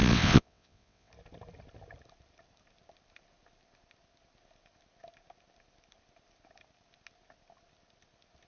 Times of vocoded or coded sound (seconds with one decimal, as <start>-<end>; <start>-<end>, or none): 0.0-1.1